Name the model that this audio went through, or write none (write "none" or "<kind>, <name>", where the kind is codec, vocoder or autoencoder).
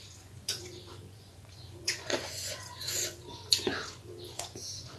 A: vocoder, Vocos